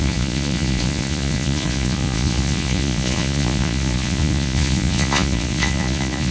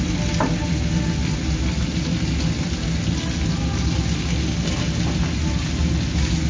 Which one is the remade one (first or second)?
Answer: first